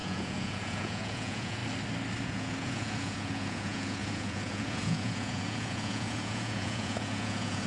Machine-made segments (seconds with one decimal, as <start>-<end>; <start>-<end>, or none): 0.0-1.6; 2.2-7.7